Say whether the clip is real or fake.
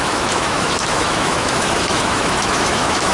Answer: fake